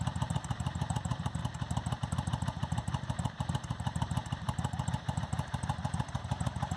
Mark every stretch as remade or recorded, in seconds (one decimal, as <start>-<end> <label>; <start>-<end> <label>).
0.0-1.4 remade; 1.4-2.0 recorded; 2.0-6.8 remade